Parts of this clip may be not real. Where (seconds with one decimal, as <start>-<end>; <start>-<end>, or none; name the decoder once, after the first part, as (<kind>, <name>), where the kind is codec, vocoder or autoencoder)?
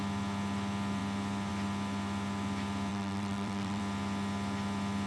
2.9-3.8 (vocoder, WaveNeXt)